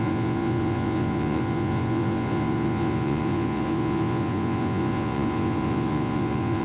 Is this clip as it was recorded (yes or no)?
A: no